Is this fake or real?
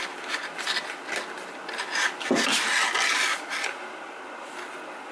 real